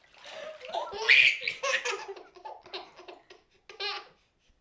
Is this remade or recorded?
recorded